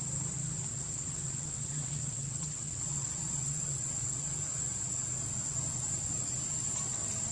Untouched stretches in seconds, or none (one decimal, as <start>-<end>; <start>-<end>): 0.0-0.7; 4.3-7.3